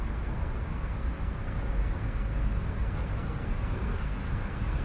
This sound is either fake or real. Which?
fake